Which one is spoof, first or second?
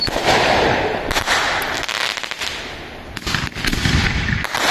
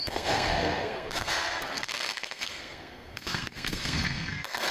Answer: second